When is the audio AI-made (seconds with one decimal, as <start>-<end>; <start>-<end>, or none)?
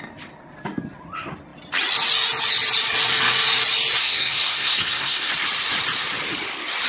4.0-5.3